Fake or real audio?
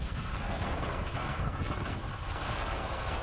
fake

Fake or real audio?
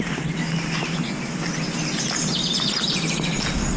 real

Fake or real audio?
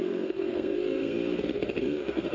fake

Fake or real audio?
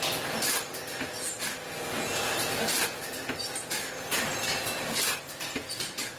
real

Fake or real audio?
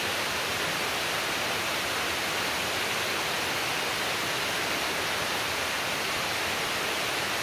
real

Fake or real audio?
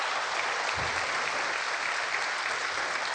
real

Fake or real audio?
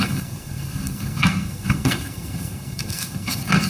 fake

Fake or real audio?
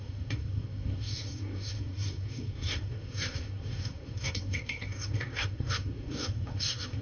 fake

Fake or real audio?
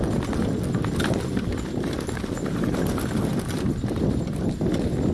real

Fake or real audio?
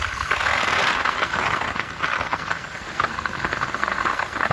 fake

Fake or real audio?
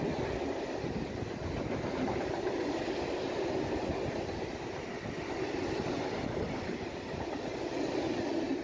real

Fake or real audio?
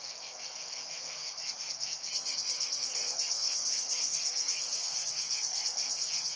fake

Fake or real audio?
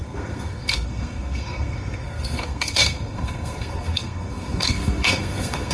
fake